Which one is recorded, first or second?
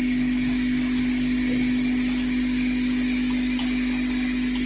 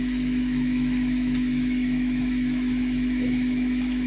first